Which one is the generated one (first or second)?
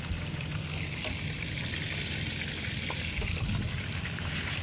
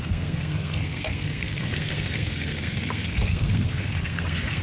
second